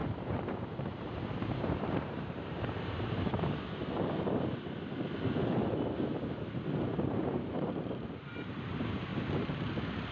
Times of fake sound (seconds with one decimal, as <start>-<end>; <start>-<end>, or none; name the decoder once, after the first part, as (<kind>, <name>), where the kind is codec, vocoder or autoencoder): 0.0-3.6 (vocoder, BigVGAN v2); 7.2-8.7; 9.1-9.7